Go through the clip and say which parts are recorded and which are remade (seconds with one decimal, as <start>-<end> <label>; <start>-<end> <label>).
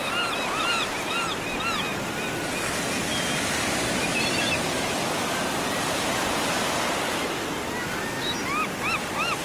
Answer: 0.0-9.4 recorded